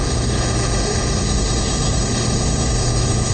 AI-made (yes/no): yes